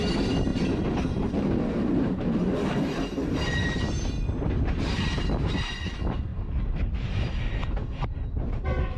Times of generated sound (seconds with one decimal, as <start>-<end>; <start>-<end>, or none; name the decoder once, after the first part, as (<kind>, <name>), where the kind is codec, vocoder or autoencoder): 0.5-5.7 (vocoder, BigVGAN v2); 6.3-7.3